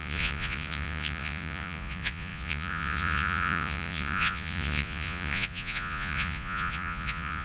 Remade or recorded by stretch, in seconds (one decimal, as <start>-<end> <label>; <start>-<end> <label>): 0.0-7.4 remade